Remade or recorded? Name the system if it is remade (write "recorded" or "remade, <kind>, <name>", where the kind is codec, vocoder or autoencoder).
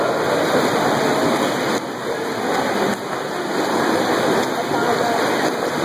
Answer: recorded